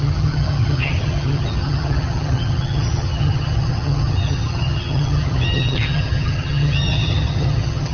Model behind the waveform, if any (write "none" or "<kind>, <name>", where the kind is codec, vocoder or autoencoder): vocoder, HiFi-GAN